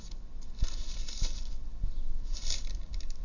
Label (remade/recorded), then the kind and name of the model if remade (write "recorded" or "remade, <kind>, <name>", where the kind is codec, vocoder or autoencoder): recorded